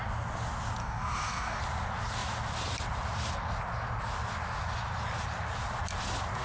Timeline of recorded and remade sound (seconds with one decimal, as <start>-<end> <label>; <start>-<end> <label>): 0.0-0.8 recorded; 0.8-1.6 remade; 1.6-6.4 recorded